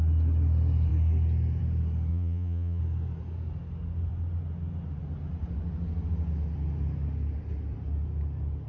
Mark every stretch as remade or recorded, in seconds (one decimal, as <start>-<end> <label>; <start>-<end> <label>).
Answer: 0.0-2.1 recorded; 2.1-2.8 remade; 2.8-8.7 recorded